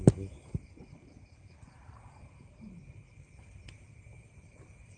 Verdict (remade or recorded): recorded